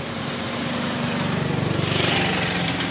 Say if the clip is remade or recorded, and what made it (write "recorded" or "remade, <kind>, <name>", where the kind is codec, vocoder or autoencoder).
remade, vocoder, BigVGAN v2